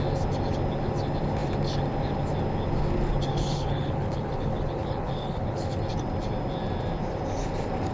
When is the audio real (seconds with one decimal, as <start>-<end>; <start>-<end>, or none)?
0.0-3.3; 5.8-7.9